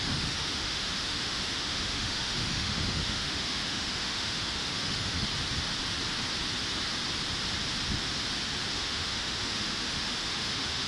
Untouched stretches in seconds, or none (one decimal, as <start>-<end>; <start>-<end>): 5.3-8.7